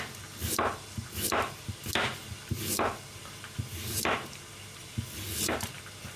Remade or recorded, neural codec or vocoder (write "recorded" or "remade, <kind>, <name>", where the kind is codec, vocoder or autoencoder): recorded